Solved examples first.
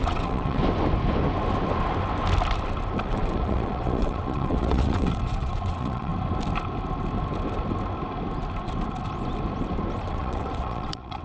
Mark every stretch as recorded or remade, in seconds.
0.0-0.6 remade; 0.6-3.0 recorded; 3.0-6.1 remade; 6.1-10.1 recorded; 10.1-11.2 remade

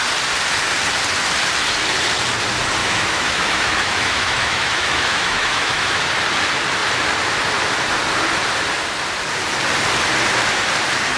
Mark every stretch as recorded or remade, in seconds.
0.0-2.8 recorded; 2.8-6.0 remade; 6.0-11.2 recorded

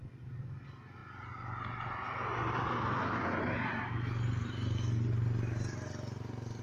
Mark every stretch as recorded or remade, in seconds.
0.0-6.6 recorded

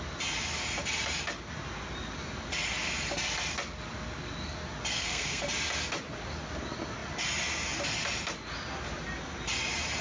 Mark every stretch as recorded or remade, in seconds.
0.0-4.9 recorded; 4.9-5.4 remade; 5.4-10.0 recorded

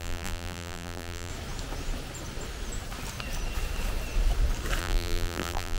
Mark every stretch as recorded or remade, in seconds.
0.0-1.3 remade; 1.3-4.8 recorded; 4.8-5.8 remade